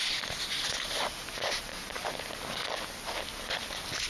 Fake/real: real